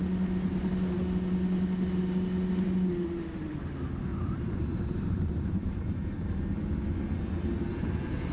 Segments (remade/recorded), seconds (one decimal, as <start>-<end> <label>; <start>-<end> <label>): 0.0-4.1 recorded; 4.1-6.4 remade; 6.4-8.3 recorded